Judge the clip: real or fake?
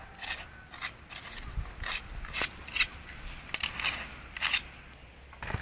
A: real